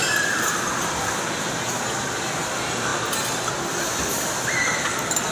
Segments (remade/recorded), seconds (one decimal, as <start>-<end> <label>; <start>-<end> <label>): 0.0-5.3 recorded